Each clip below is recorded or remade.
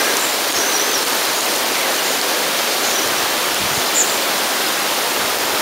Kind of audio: recorded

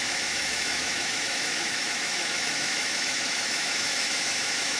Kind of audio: remade